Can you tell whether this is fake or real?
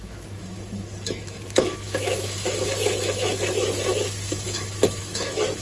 fake